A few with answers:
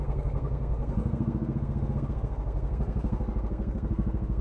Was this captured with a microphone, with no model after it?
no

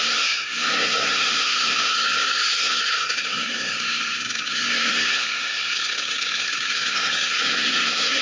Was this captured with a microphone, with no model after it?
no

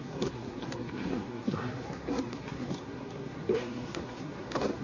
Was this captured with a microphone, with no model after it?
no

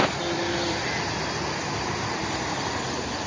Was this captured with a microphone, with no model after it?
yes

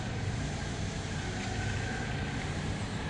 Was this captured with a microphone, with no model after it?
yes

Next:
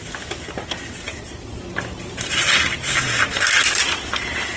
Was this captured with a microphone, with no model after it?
yes